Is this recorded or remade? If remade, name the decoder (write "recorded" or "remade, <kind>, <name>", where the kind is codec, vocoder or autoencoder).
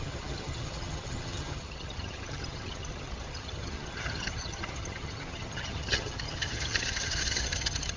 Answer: remade, vocoder, HiFi-GAN